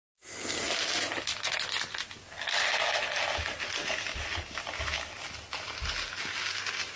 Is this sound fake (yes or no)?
no